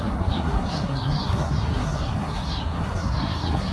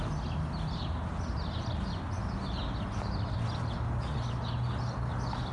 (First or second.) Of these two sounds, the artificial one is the first